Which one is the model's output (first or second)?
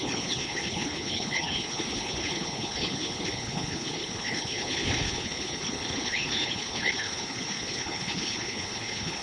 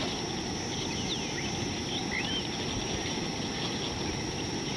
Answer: first